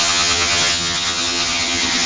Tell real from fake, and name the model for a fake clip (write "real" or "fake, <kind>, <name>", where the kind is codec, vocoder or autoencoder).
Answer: fake, vocoder, HiFi-GAN